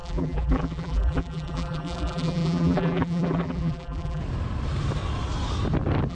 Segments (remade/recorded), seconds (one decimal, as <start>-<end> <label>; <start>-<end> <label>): 0.0-4.2 remade; 4.2-6.1 recorded